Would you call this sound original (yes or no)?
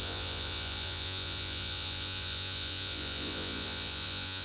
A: no